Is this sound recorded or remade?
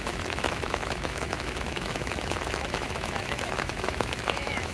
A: remade